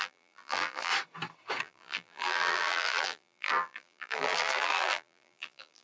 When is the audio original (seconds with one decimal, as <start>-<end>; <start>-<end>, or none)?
0.9-1.6